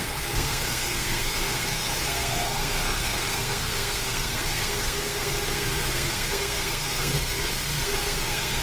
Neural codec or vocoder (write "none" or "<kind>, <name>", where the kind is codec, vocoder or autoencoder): codec, SNAC